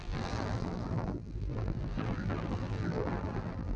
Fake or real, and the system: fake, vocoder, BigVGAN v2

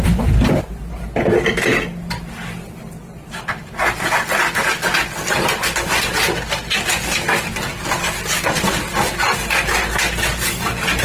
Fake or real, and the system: real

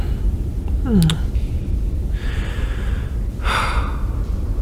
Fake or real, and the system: real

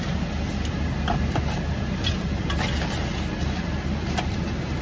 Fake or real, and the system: real